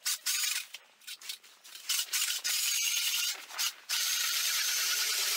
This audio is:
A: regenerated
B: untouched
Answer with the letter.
A